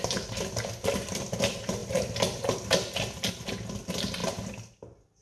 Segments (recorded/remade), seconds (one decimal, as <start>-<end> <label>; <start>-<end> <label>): 0.0-5.2 recorded